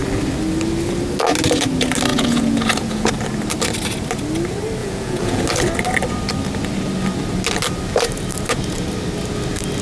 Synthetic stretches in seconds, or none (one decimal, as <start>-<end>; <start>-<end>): 2.1-3.1; 4.8-5.4